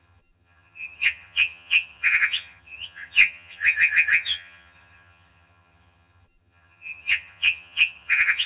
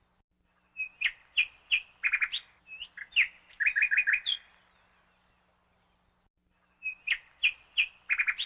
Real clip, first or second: second